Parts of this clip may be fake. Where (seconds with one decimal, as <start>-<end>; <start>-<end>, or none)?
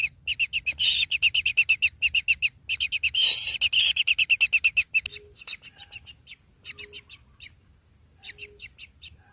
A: none